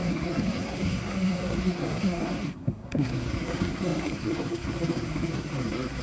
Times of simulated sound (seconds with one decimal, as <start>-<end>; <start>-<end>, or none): 0.0-6.0